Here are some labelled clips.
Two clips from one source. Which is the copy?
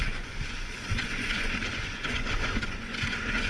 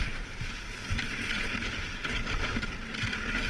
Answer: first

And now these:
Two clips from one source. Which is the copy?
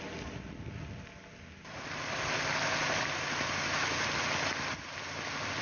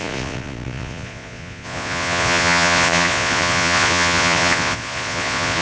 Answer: second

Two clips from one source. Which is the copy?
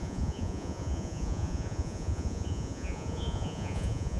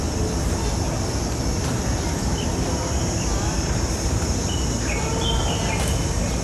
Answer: first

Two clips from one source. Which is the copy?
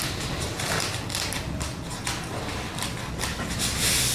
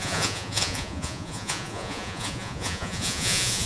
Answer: second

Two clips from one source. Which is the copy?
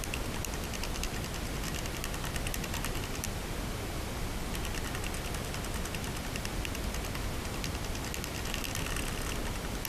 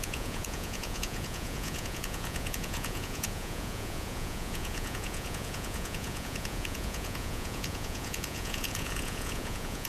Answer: second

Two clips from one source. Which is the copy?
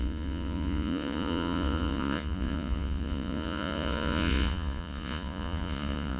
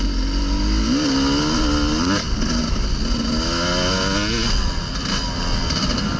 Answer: first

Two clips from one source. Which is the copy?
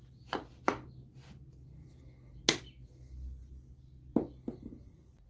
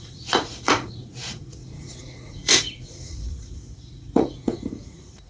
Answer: second